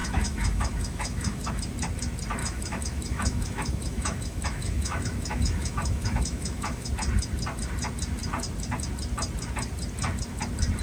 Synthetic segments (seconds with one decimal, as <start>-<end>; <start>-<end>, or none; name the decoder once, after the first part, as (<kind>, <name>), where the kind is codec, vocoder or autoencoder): 0.0-1.5 (autoencoder, DAC-VAE); 2.4-6.9